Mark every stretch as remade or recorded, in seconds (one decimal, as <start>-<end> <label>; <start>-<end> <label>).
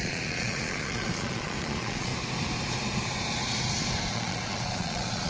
0.0-2.1 remade; 2.1-4.1 recorded; 4.1-5.3 remade